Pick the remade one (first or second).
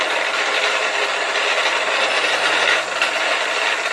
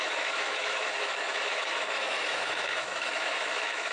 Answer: second